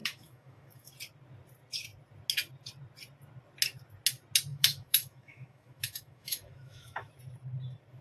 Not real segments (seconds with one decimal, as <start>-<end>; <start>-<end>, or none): 0.0-0.9; 4.5-7.1